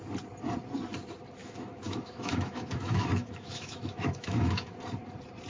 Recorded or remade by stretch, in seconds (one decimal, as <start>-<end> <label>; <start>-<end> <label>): 0.0-1.4 recorded; 1.4-4.7 remade; 4.7-5.5 recorded